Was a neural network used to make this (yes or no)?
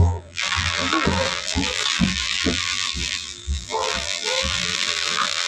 yes